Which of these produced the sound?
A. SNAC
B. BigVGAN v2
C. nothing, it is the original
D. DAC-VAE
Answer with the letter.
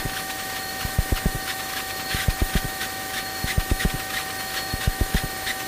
D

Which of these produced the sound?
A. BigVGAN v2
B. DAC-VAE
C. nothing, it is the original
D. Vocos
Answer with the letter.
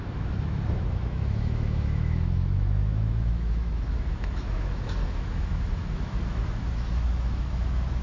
B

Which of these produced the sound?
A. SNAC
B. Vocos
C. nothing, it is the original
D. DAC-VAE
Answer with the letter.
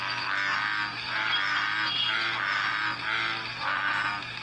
C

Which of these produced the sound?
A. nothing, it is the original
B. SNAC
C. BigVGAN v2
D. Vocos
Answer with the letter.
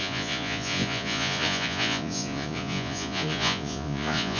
D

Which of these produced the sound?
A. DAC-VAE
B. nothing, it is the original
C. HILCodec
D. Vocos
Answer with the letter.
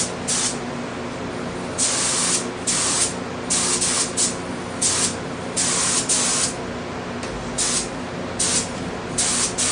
B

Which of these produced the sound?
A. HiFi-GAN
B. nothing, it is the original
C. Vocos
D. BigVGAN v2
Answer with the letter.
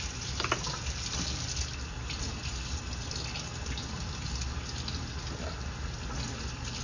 B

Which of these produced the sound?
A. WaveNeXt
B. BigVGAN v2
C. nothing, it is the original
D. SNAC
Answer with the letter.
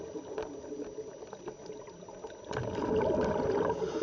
C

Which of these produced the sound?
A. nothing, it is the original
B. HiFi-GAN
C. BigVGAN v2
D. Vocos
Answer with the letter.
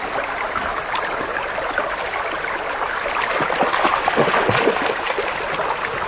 A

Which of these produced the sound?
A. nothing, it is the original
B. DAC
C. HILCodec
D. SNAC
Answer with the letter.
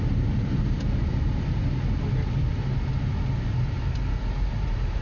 A